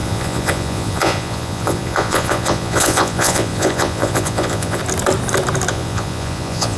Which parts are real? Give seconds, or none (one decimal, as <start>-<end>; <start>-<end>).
4.8-5.7